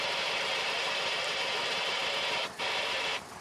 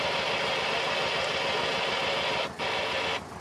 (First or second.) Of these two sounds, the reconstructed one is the first